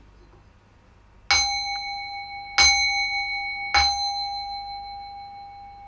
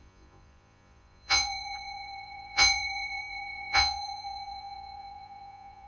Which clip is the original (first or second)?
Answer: first